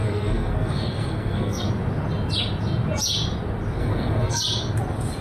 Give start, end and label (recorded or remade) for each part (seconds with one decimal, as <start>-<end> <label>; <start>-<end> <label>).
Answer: 0.0-1.7 remade; 1.7-3.8 recorded; 3.8-4.4 remade; 4.4-5.2 recorded